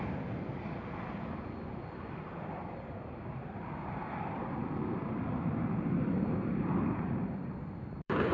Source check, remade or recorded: remade